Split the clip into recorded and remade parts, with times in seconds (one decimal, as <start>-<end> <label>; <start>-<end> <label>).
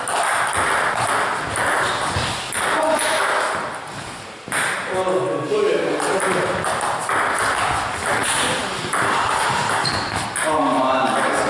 0.0-8.2 recorded; 8.2-8.7 remade; 8.7-11.5 recorded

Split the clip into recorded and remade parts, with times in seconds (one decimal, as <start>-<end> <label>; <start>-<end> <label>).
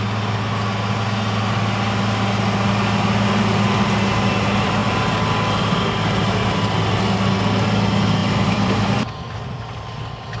0.0-8.2 recorded; 8.2-10.0 remade; 10.0-10.4 recorded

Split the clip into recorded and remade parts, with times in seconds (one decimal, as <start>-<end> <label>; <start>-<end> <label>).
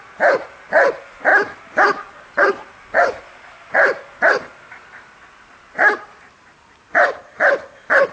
0.0-1.3 recorded; 1.3-6.2 remade; 6.2-8.1 recorded